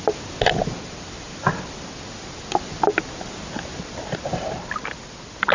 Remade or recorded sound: recorded